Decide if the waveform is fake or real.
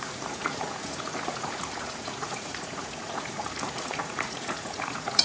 fake